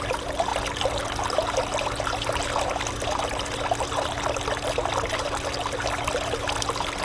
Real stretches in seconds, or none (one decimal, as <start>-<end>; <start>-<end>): 0.0-7.0